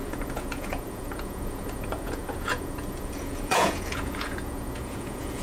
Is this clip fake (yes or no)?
yes